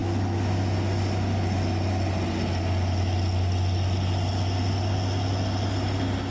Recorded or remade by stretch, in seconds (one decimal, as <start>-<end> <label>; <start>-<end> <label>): 0.0-6.3 recorded